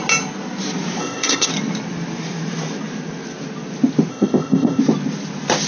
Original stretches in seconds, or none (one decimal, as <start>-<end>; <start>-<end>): 0.0-1.0; 1.5-4.1; 4.8-5.7